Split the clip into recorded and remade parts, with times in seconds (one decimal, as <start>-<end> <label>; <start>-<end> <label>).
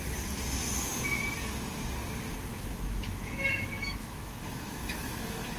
0.0-2.5 recorded; 2.5-5.6 remade